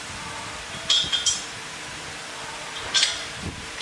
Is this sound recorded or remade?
remade